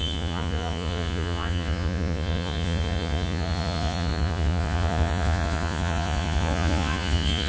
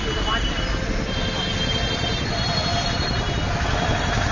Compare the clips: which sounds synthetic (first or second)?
first